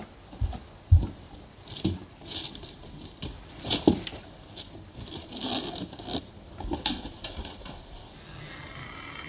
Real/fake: real